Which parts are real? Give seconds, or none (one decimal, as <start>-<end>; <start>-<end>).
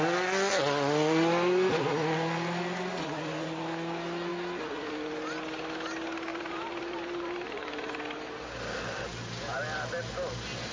0.0-6.3; 8.4-10.7